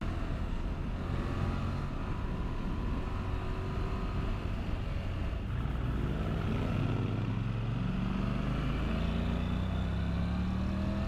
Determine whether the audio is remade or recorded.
recorded